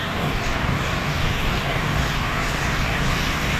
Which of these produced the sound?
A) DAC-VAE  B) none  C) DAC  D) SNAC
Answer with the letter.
C